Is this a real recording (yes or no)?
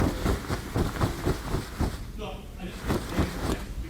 no